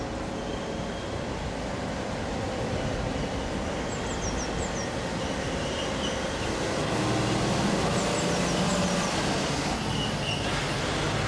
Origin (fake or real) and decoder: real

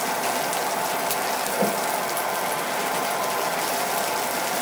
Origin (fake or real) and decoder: real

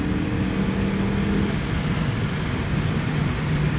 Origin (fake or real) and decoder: real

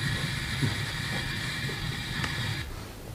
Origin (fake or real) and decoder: fake, vocoder, BigVGAN v2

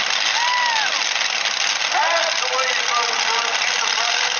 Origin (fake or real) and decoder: real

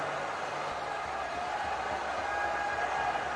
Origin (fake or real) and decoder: real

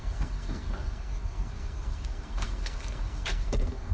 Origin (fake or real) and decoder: fake, codec, SNAC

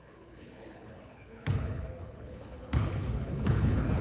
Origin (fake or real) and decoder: fake, codec, HILCodec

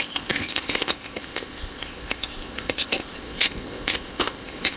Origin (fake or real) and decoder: fake, codec, ZipCodec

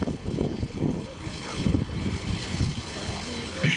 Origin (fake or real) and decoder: fake, codec, HILCodec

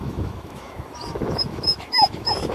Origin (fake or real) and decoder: fake, autoencoder, DAC-VAE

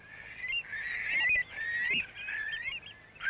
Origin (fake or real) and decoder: real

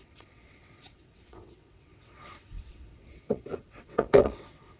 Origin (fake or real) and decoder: fake, vocoder, WaveNeXt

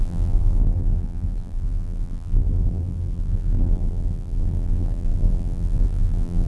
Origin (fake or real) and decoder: fake, vocoder, BigVGAN v2